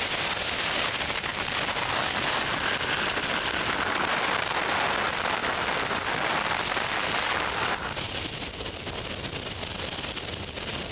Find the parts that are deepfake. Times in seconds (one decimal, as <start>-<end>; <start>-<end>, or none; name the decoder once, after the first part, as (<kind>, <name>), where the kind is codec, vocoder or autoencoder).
none